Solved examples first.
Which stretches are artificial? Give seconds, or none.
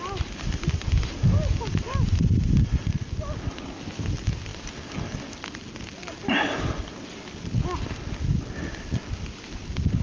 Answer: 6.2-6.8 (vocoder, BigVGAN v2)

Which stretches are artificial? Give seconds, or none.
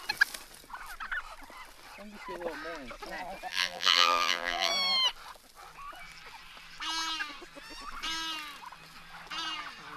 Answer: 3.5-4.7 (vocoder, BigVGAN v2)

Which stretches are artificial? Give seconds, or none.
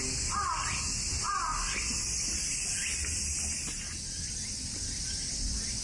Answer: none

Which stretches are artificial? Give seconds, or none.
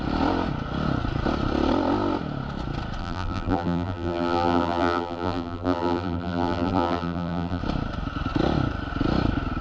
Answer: 3.0-7.6 (vocoder, BigVGAN v2)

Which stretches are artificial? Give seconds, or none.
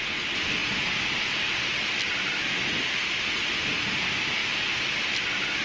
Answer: none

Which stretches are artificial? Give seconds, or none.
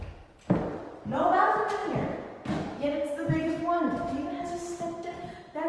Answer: none